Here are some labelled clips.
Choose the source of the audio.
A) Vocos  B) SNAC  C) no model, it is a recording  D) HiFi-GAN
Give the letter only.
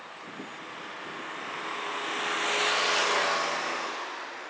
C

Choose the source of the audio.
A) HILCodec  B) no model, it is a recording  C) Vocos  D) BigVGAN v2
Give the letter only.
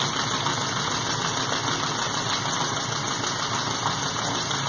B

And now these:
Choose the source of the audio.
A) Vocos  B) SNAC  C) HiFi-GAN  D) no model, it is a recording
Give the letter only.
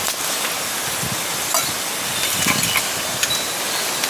D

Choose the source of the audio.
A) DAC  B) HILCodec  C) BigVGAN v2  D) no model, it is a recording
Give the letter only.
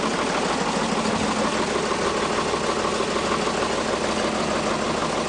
D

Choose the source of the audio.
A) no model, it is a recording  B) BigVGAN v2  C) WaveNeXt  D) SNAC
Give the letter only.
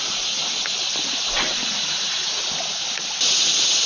A